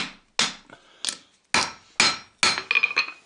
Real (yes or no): yes